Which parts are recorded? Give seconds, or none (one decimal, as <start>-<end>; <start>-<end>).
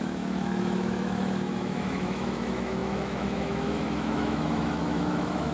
none